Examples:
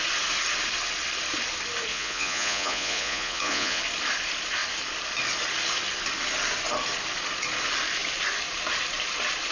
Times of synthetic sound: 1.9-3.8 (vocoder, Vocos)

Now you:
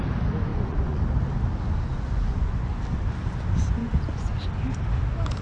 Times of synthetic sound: 0.5-1.0 (vocoder, Vocos); 1.9-2.6; 3.8-4.5

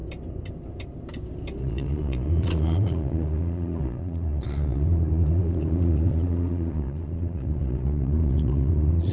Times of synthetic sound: 1.6-9.1 (vocoder, Vocos)